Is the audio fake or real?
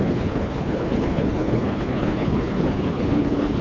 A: fake